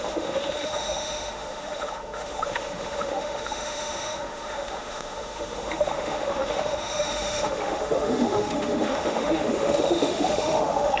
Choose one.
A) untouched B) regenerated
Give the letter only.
B